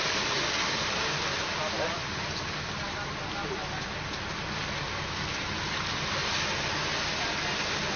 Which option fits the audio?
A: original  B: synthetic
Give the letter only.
A